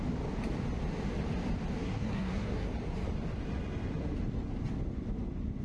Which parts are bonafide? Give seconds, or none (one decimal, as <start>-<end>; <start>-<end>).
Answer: 0.0-1.8; 2.7-5.6